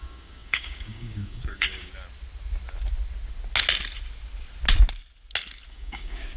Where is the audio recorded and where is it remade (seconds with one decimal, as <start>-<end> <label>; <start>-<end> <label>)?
0.0-1.9 remade; 1.9-5.7 recorded; 5.7-6.4 remade